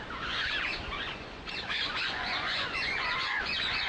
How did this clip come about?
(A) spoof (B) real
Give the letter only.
A